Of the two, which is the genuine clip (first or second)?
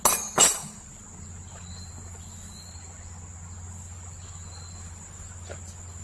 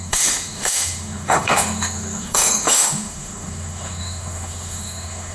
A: first